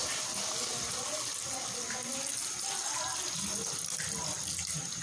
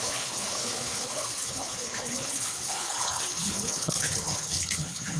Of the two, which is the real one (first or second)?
first